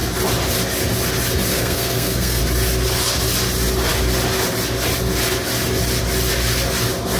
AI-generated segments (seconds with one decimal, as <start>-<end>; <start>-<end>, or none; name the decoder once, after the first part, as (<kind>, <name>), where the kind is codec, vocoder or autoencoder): 1.5-2.4 (codec, SNAC)